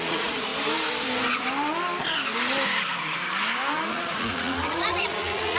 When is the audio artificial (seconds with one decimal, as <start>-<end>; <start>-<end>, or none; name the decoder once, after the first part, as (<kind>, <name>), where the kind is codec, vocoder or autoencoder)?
0.0-0.5 (vocoder, Vocos); 3.9-5.6